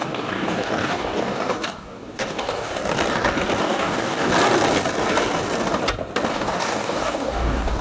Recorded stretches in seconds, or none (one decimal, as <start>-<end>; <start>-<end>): 2.7-3.6; 4.3-6.3